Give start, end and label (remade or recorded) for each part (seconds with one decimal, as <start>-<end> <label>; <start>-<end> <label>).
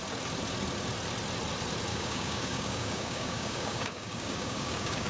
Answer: 0.0-1.9 recorded; 1.9-5.1 remade